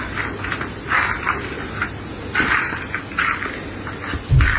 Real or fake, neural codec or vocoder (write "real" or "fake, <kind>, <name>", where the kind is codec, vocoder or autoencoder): real